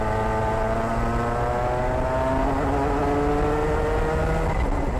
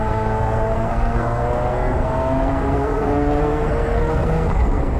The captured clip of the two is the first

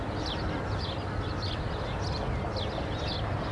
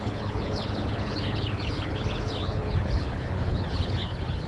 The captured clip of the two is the first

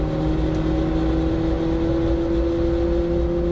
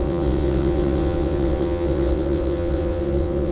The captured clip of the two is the first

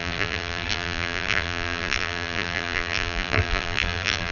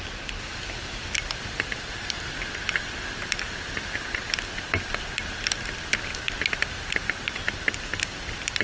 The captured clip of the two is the second